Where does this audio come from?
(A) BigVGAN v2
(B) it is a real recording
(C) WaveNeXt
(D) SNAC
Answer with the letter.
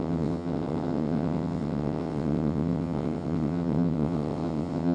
C